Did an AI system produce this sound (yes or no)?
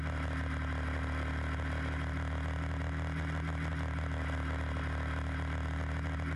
no